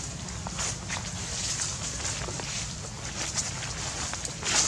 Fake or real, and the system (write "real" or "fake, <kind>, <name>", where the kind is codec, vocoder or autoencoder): real